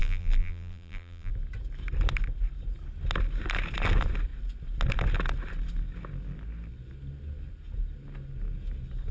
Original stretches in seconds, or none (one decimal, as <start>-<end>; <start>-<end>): 1.3-9.1